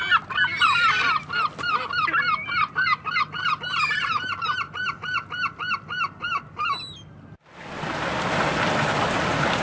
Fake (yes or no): yes